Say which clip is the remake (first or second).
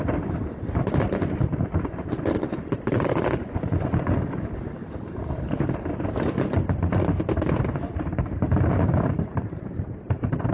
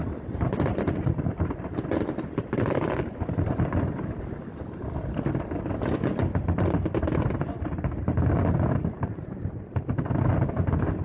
first